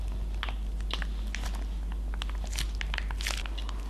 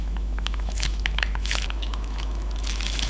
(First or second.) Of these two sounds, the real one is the first